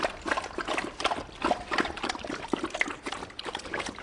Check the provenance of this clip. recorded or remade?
remade